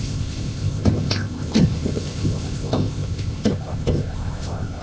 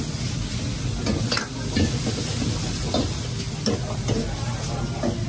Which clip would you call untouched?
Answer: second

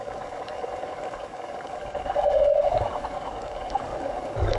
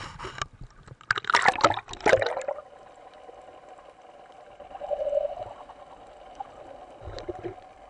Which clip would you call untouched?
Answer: second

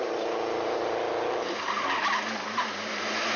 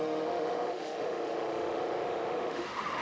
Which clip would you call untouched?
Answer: first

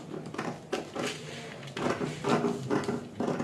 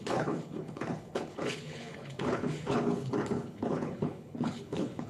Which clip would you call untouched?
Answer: first